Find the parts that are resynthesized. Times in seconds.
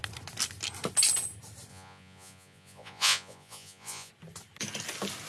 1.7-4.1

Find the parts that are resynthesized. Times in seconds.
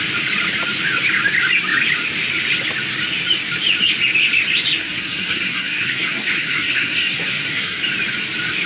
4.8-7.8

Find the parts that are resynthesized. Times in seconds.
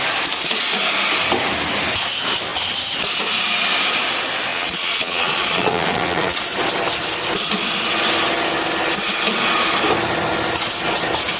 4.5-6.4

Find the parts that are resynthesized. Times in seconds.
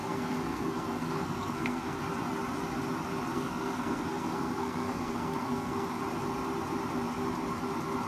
0.0-2.0; 3.3-6.0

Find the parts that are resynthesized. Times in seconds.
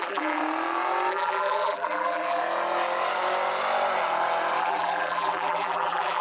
0.0-0.4; 1.1-2.4; 4.6-6.2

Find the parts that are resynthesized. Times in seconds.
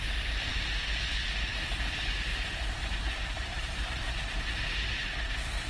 2.3-3.9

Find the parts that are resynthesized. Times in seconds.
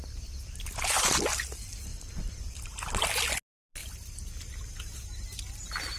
none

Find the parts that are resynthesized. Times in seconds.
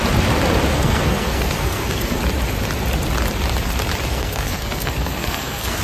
0.7-2.2; 4.1-5.8